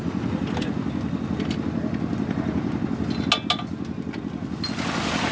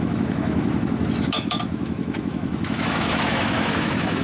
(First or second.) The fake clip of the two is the second